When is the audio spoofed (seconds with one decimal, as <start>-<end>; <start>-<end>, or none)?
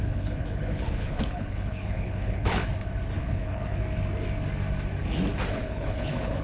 0.0-2.6; 3.2-3.8; 5.5-6.4